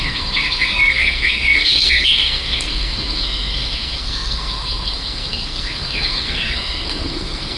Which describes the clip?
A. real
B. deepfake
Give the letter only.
B